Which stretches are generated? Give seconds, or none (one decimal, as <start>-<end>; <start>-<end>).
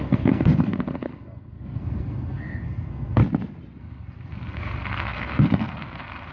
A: 0.0-3.2; 3.8-6.3